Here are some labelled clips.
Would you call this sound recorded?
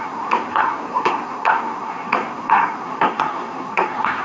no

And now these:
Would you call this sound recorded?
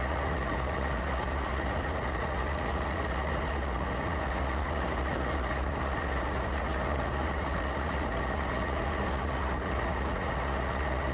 no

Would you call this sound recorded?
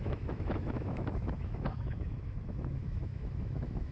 no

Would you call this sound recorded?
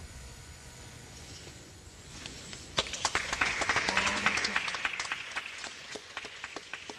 no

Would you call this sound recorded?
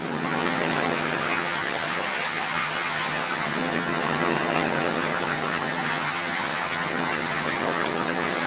no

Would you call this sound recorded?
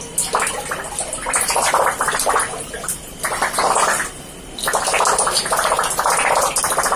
no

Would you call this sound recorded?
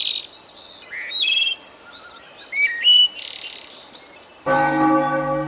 yes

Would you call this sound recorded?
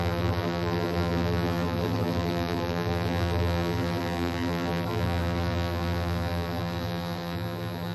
no